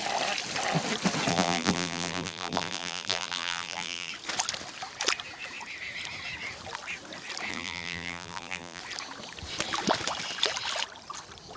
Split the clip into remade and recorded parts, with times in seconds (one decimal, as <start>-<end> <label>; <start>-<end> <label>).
0.0-1.3 recorded; 1.3-4.1 remade; 4.1-7.5 recorded; 7.5-8.8 remade; 8.8-11.6 recorded